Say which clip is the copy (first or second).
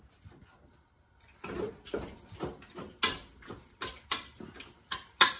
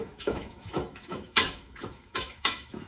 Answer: second